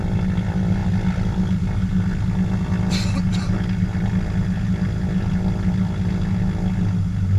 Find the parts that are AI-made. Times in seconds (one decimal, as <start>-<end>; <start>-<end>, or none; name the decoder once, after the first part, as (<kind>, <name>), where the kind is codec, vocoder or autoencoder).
none